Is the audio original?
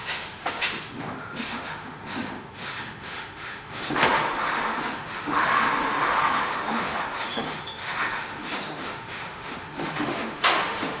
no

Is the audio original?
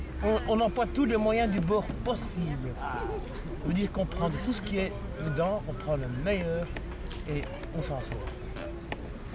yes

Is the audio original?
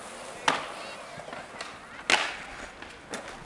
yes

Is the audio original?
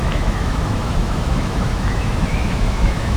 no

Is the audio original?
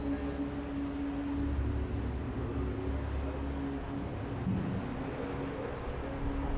yes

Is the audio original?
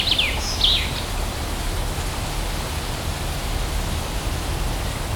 yes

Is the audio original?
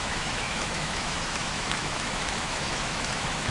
no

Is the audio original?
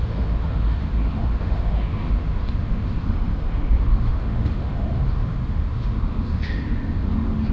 no